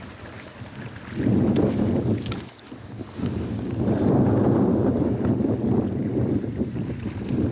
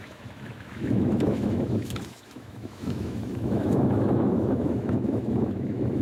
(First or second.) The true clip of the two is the first